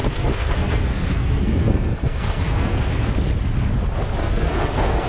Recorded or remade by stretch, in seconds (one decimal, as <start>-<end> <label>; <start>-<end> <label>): 0.0-3.1 remade; 3.1-4.2 recorded; 4.2-5.1 remade